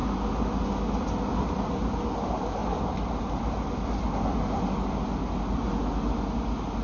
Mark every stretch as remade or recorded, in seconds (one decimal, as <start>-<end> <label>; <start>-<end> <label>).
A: 0.0-6.8 recorded